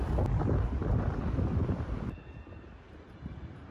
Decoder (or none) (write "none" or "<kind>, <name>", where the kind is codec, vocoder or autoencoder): none